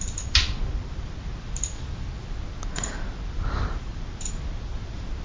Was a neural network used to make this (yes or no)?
no